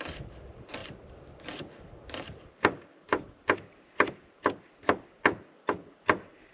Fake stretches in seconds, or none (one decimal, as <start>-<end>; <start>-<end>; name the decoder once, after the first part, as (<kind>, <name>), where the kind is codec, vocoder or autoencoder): none

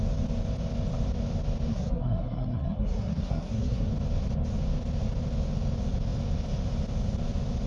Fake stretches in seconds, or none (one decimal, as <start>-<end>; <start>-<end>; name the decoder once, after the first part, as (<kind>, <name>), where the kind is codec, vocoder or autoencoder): 1.7-3.9 (codec, SNAC)